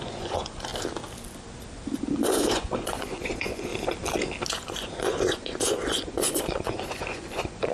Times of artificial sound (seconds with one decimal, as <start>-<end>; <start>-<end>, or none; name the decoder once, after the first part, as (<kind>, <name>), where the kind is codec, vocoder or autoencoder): 0.0-0.7 (vocoder, Vocos); 2.1-3.7; 4.5-7.7